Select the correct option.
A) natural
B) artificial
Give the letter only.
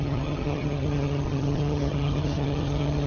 B